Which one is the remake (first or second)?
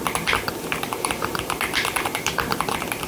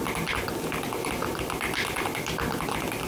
first